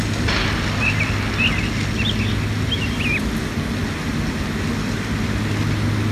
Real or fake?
real